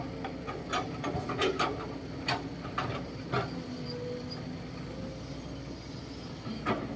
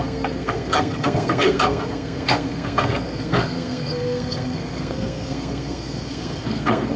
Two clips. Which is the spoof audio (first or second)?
second